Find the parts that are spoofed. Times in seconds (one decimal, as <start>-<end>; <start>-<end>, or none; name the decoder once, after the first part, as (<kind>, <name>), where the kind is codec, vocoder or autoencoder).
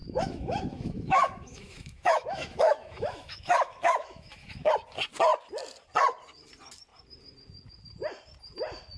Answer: 0.0-4.7 (autoencoder, DAC-VAE)